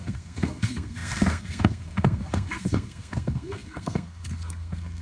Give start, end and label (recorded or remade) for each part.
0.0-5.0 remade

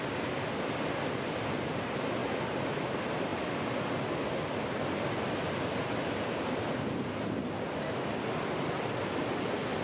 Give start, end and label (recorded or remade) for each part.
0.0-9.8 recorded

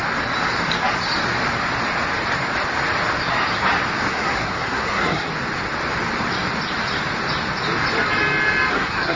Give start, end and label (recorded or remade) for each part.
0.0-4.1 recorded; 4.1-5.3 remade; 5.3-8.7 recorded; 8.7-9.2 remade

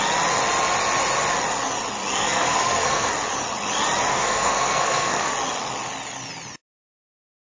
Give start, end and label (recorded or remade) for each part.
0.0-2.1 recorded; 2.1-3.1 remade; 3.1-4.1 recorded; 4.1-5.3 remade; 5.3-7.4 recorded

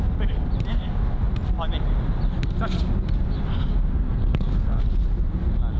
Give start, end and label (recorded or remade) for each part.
0.0-3.9 recorded; 3.9-4.8 remade; 4.8-5.8 recorded

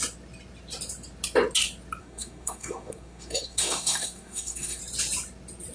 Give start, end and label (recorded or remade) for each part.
0.0-2.0 recorded; 2.0-4.8 remade; 4.8-5.7 recorded

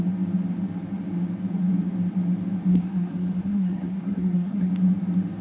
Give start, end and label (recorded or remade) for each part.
0.0-2.7 recorded; 2.7-4.7 remade; 4.7-5.4 recorded

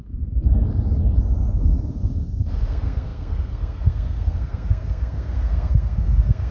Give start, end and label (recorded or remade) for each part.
0.0-0.6 remade; 0.6-1.4 recorded; 1.4-6.5 remade